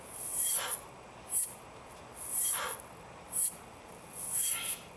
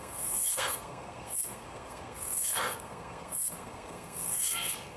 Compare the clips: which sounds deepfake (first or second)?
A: second